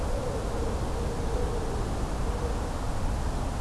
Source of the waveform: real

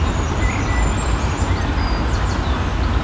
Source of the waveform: real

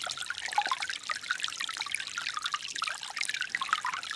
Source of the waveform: real